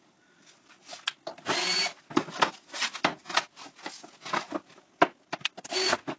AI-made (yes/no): no